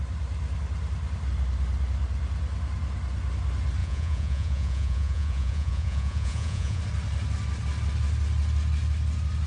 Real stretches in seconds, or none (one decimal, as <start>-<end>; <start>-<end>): 0.0-3.8; 6.8-9.5